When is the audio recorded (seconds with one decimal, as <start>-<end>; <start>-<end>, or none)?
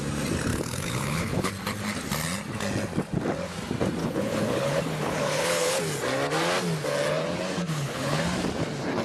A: 0.0-0.5; 1.5-4.0; 5.8-7.7; 8.2-9.0